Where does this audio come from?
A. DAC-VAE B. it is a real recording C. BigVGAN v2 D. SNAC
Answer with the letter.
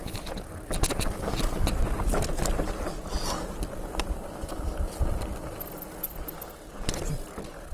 B